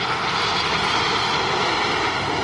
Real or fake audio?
real